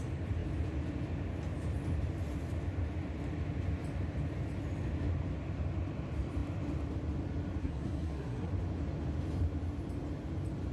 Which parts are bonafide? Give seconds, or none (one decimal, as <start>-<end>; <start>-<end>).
0.0-7.6; 8.5-10.7